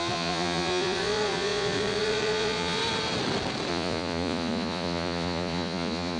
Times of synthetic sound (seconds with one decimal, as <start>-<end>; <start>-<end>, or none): 0.0-2.8; 3.7-6.2